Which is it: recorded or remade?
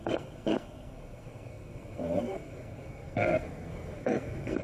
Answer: remade